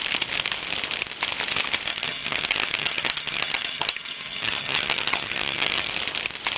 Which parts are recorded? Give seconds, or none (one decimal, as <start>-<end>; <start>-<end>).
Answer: 0.0-1.9; 5.9-6.6